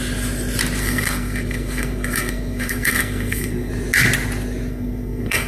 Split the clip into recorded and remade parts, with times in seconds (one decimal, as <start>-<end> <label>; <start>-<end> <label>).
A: 0.0-0.8 recorded; 0.8-3.7 remade; 3.7-4.7 recorded; 4.7-5.5 remade